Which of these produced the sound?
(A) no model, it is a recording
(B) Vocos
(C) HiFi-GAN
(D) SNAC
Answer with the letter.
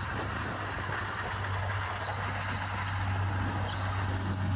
A